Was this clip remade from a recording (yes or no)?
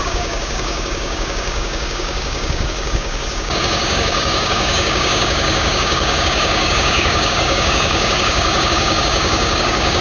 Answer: yes